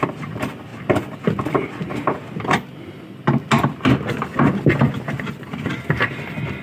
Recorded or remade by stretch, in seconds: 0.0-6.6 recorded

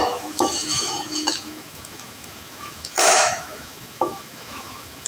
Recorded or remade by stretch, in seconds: 0.0-5.1 remade